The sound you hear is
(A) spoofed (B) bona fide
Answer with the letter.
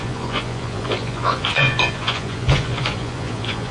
A